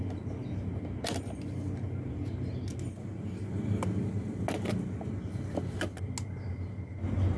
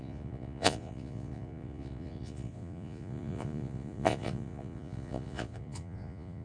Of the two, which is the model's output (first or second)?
second